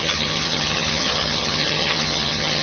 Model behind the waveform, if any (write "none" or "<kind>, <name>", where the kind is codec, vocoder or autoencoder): vocoder, HiFi-GAN